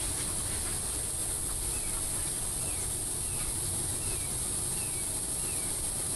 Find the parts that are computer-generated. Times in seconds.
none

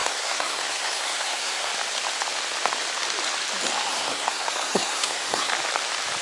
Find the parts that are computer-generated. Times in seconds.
0.0-1.7 (codec, SNAC); 3.9-5.5

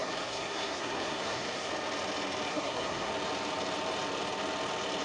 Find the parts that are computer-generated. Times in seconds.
0.0-1.7 (codec, SNAC); 2.5-3.1

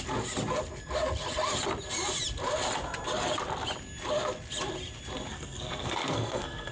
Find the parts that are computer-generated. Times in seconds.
5.3-6.7 (codec, SNAC)

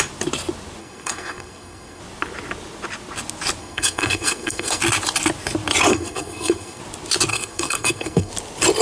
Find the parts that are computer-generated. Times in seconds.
0.8-2.0 (codec, SNAC); 3.6-4.8; 5.9-6.8; 7.3-8.3

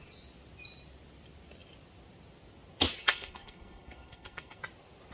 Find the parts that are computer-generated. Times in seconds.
3.0-4.6 (codec, SNAC)